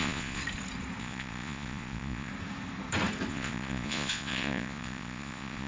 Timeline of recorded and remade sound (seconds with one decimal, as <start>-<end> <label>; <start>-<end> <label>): 0.0-0.4 remade; 0.4-1.0 recorded; 1.0-2.3 remade; 2.3-3.3 recorded; 3.3-5.7 remade